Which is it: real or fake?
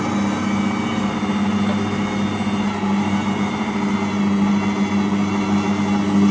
real